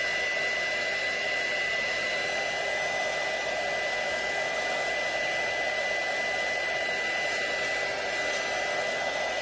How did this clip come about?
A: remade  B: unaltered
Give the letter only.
B